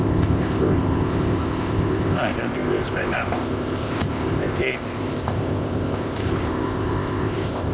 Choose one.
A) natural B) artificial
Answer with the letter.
B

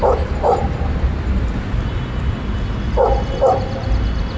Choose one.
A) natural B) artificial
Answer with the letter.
A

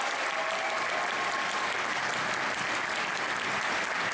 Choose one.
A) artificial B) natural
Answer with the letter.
B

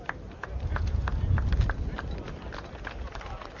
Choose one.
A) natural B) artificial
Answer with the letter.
A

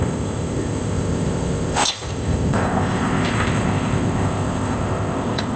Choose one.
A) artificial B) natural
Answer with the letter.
A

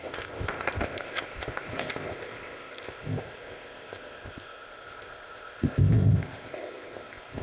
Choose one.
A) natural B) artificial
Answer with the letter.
B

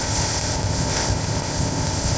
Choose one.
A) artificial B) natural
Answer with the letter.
A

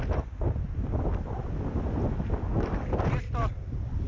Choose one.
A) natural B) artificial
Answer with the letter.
A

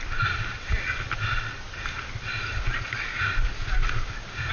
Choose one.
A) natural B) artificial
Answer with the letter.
A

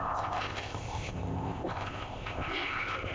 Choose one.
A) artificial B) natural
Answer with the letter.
A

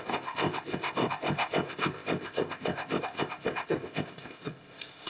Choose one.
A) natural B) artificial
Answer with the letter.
B